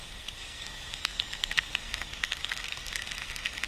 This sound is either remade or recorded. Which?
remade